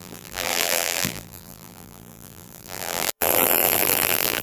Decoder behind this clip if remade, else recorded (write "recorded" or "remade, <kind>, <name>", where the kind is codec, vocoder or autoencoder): remade, vocoder, BigVGAN v2